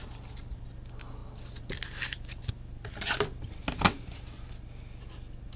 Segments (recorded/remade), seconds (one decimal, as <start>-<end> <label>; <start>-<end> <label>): 0.0-5.6 recorded